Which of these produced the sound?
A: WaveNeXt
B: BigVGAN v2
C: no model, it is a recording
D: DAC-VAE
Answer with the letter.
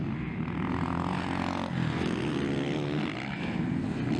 C